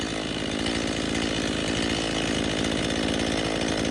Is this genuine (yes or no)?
yes